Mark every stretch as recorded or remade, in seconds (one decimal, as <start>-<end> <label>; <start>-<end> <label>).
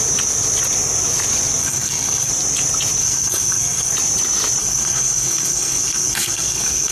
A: 0.0-1.6 recorded; 1.6-2.3 remade; 2.3-3.0 recorded; 3.0-3.9 remade; 3.9-4.6 recorded; 4.6-6.9 remade